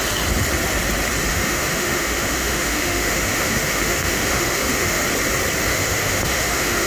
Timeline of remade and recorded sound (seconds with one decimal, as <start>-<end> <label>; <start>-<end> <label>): 0.0-1.3 recorded; 1.3-5.0 remade; 5.0-5.7 recorded; 5.7-6.9 remade